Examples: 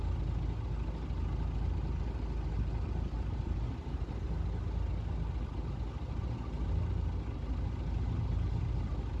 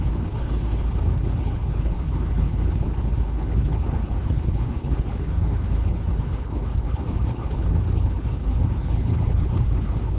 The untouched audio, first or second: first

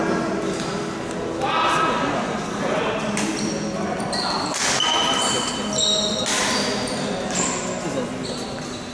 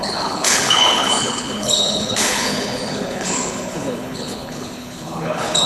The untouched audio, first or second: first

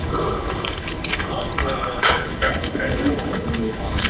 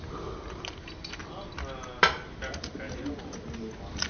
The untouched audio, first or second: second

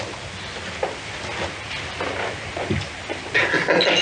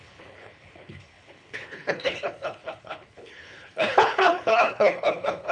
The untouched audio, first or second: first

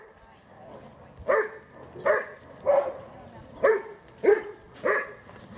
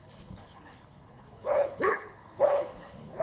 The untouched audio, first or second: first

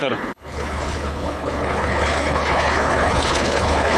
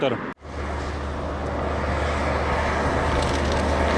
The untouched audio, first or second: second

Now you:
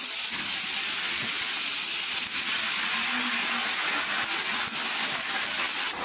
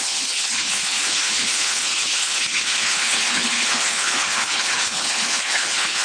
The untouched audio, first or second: first